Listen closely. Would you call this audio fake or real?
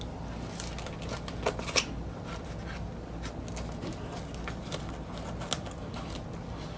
real